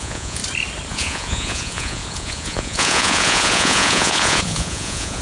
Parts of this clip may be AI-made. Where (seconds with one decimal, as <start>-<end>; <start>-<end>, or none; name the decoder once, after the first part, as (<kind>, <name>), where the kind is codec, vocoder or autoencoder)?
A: 0.0-0.4 (vocoder, Vocos); 0.9-5.2